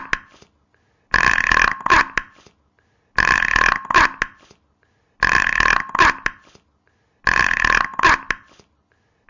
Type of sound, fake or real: real